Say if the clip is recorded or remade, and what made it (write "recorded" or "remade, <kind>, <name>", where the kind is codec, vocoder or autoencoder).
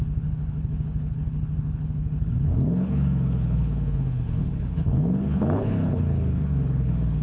remade, codec, HILCodec